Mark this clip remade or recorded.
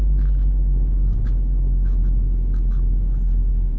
remade